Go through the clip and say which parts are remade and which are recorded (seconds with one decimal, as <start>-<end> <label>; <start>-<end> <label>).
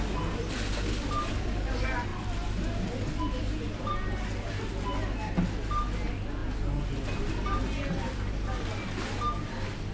0.0-9.9 recorded